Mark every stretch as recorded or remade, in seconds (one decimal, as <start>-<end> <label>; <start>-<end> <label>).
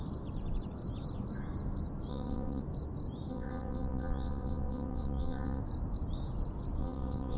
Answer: 0.0-2.1 recorded; 2.1-2.6 remade; 2.6-3.3 recorded; 3.3-5.6 remade; 5.6-6.8 recorded; 6.8-7.4 remade